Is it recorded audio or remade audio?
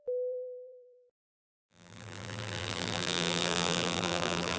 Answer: remade